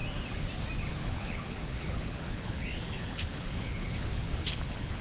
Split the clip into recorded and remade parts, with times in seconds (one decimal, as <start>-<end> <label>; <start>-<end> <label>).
0.0-0.9 recorded; 0.9-5.0 remade